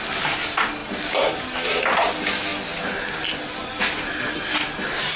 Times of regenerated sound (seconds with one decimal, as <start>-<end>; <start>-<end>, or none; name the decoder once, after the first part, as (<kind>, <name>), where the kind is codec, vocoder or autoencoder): none